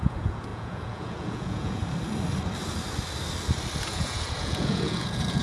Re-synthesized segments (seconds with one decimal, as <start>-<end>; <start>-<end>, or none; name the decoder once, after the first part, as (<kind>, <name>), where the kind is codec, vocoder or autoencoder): 0.0-1.8 (vocoder, Vocos); 3.8-5.4